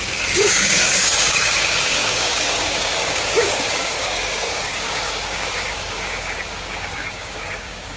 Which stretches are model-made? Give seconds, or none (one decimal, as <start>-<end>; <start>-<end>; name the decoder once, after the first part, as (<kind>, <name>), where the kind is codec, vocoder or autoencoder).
0.0-8.0 (codec, DAC)